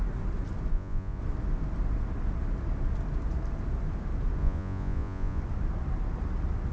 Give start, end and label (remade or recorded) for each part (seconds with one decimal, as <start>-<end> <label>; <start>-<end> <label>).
0.0-0.7 recorded; 0.7-1.2 remade; 1.2-4.4 recorded; 4.4-5.4 remade; 5.4-6.7 recorded